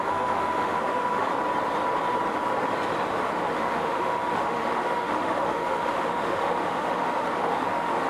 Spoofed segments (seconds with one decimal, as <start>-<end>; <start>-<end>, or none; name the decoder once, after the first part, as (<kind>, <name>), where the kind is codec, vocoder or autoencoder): 0.0-1.3 (autoencoder, DAC-VAE); 3.4-8.1

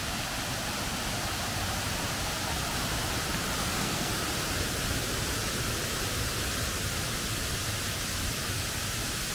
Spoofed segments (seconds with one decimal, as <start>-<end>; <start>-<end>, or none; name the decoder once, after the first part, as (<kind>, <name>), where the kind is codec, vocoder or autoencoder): 3.6-4.1 (codec, SNAC)